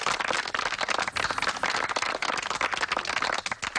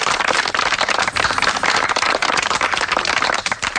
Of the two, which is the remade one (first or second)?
second